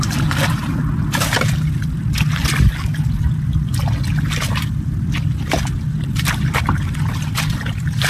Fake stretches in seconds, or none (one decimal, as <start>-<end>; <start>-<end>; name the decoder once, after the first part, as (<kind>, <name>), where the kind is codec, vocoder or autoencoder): none